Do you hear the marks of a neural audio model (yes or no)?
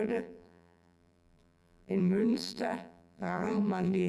yes